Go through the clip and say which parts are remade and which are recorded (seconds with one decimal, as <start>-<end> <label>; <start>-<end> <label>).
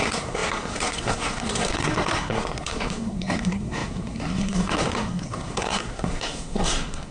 0.0-7.1 remade